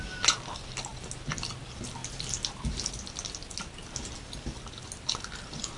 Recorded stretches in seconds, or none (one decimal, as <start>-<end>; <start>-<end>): 0.0-5.8